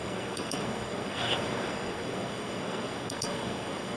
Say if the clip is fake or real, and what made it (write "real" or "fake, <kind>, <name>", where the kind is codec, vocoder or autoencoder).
fake, codec, SNAC